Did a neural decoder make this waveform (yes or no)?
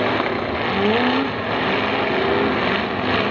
no